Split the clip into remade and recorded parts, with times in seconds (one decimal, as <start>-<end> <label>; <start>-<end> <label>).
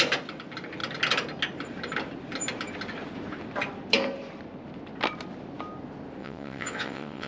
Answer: 0.0-6.2 recorded; 6.2-7.3 remade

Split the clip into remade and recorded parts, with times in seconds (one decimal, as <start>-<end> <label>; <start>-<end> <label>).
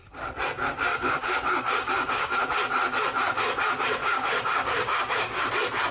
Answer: 0.0-0.9 recorded; 0.9-2.4 remade; 2.4-4.0 recorded; 4.0-5.5 remade; 5.5-5.9 recorded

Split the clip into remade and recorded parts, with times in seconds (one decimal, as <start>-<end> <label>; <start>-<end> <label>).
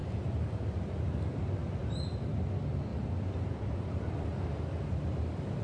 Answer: 0.0-0.5 remade; 0.5-1.8 recorded; 1.8-2.4 remade; 2.4-2.9 recorded; 2.9-4.5 remade; 4.5-5.6 recorded